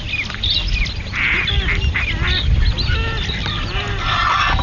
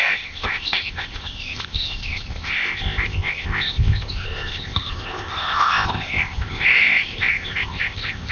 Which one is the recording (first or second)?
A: first